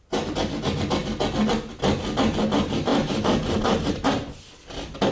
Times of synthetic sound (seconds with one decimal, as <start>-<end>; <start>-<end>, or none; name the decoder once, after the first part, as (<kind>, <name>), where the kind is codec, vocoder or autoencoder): none